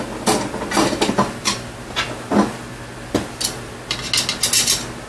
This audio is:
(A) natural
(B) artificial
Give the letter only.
A